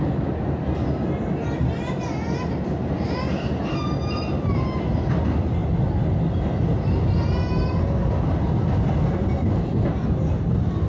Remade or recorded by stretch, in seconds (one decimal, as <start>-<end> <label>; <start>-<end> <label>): 0.0-10.9 recorded